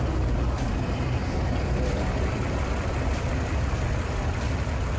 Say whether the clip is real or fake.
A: real